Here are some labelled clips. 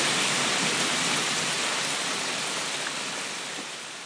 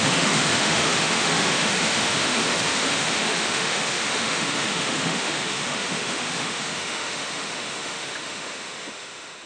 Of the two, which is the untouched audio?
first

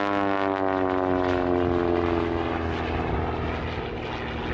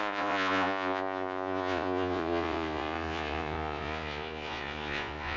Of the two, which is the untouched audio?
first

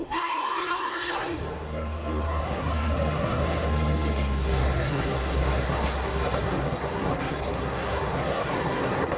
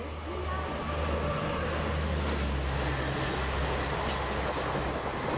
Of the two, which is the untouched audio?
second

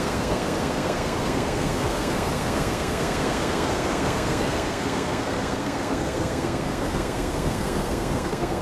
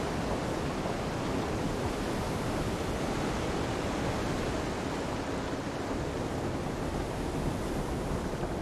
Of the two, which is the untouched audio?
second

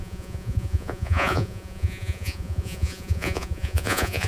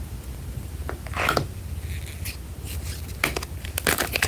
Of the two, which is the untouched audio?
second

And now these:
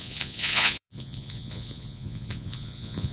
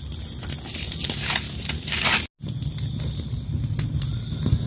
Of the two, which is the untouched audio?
second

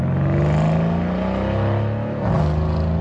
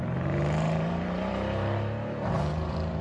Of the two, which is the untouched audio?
first